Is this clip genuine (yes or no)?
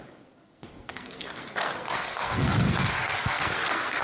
no